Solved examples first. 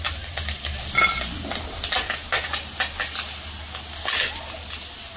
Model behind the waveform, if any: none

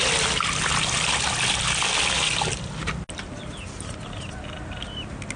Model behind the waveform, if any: none